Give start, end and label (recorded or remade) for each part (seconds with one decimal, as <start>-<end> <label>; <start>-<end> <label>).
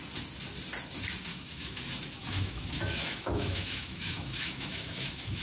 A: 0.0-1.3 recorded; 1.3-1.8 remade; 1.8-2.2 recorded; 2.2-5.4 remade